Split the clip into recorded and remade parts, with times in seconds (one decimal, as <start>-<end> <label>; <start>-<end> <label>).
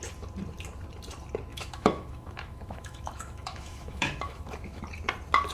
0.0-1.5 recorded; 1.5-4.8 remade; 4.8-5.5 recorded